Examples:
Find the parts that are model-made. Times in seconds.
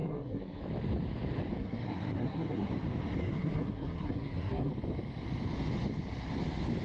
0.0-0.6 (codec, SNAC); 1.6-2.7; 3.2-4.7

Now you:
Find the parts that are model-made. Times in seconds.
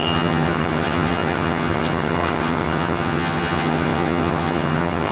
0.0-5.1 (vocoder, HiFi-GAN)